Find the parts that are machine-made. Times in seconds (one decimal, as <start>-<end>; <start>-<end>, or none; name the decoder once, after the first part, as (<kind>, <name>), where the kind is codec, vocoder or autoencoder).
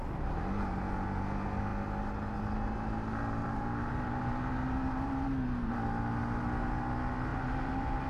3.4-5.7 (vocoder, BigVGAN v2); 7.3-8.1